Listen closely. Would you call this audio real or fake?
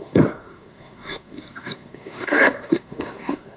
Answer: fake